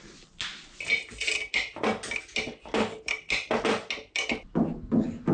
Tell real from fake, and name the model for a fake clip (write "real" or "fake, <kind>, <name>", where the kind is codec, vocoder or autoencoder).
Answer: real